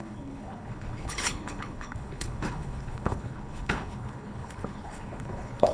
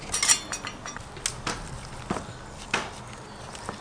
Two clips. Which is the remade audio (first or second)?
first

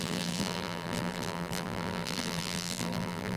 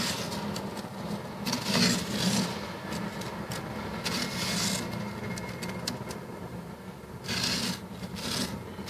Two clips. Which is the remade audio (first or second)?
first